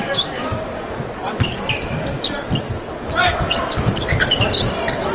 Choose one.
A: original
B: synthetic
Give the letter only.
A